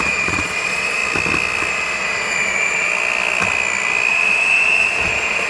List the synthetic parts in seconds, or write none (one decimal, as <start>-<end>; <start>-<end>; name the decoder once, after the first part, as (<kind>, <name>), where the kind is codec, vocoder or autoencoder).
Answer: 0.0-1.0 (vocoder, Vocos); 1.7-2.9; 4.1-5.5

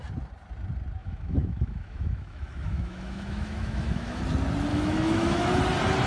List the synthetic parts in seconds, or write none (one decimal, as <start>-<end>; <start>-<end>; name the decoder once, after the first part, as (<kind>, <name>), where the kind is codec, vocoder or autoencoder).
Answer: 1.0-4.2 (autoencoder, DAC-VAE); 4.7-5.5